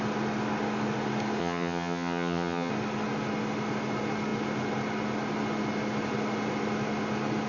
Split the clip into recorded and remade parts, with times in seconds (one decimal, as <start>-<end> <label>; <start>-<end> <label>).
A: 0.0-1.4 recorded; 1.4-2.7 remade; 2.7-7.5 recorded